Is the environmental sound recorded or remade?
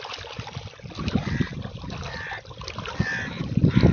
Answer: recorded